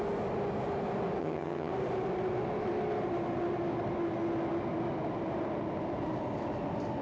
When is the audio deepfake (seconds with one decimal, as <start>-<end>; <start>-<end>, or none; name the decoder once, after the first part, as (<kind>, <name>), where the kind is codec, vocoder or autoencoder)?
1.2-1.7 (vocoder, HiFi-GAN)